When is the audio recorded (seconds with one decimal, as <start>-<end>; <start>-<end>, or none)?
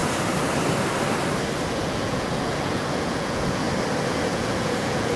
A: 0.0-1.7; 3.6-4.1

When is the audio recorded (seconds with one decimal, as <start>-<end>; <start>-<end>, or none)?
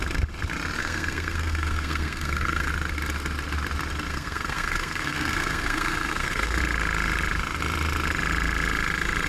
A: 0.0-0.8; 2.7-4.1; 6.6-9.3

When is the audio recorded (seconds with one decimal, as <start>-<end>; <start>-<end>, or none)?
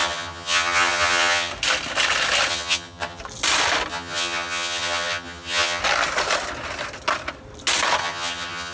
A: 1.5-2.5; 3.2-3.9; 5.8-8.0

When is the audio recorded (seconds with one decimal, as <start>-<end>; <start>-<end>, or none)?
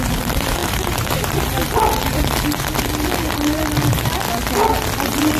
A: 0.0-0.6; 1.3-5.4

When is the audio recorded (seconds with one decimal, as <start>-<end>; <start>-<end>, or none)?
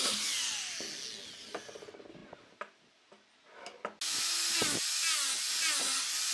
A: 0.0-6.3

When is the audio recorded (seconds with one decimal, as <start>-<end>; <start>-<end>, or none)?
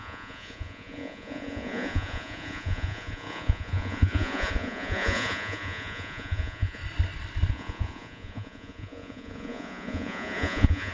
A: 6.8-7.5